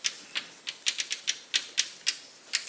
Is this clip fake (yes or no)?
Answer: no